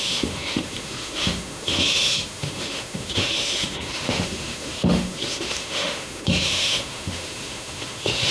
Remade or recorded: remade